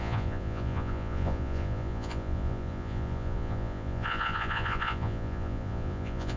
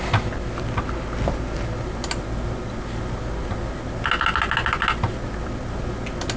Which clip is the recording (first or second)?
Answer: second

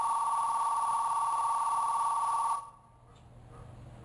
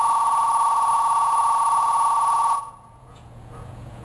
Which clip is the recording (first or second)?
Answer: first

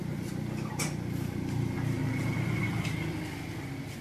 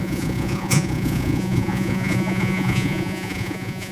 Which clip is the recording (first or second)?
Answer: first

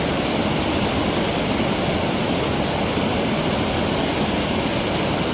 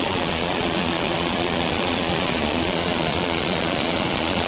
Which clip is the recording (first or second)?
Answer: first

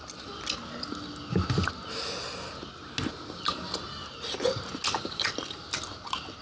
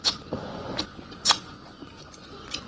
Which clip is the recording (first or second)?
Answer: first